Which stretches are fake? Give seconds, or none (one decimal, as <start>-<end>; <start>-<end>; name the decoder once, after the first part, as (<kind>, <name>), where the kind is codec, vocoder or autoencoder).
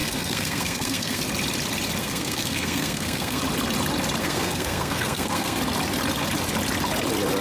0.0-1.2 (codec, SNAC); 2.0-3.4; 4.2-5.6